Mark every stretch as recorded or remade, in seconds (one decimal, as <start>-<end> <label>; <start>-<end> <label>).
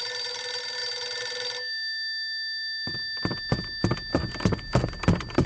0.0-5.5 recorded